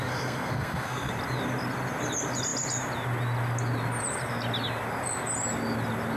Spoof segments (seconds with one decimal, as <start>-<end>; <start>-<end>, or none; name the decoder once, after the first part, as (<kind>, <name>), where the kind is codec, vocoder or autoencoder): 0.0-1.1 (codec, SNAC)